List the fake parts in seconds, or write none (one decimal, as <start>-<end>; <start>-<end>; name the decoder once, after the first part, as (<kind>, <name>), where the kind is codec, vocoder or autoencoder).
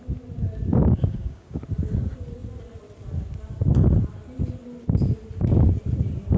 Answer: 0.8-1.6 (codec, DAC)